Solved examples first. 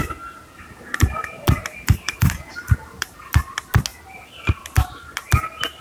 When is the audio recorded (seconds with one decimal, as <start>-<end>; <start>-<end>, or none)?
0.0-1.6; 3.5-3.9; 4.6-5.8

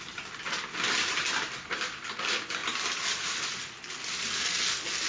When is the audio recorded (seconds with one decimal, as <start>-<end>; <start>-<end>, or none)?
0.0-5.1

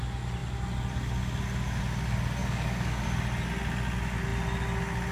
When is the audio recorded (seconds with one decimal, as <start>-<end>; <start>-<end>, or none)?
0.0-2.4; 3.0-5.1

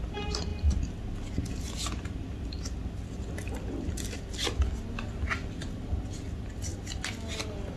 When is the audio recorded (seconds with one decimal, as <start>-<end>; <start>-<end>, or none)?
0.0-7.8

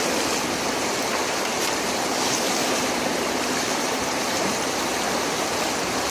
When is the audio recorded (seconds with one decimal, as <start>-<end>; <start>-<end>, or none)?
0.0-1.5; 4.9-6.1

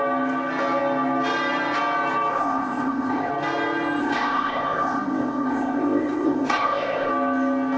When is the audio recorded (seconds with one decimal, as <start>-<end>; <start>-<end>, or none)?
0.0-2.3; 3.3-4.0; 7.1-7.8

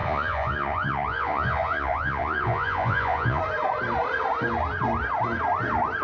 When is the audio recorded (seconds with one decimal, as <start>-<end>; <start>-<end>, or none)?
3.4-6.0